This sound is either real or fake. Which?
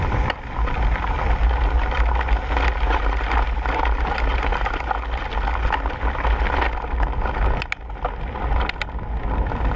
real